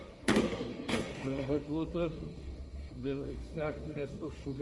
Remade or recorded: remade